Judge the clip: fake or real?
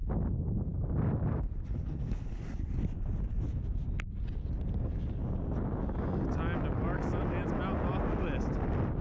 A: real